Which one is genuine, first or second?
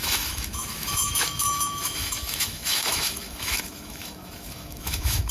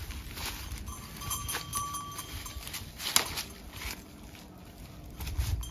second